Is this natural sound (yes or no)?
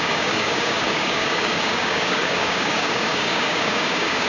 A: no